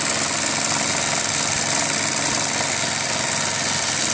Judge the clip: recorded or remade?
recorded